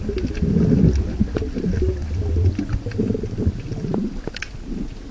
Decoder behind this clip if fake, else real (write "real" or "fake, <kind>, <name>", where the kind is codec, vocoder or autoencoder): real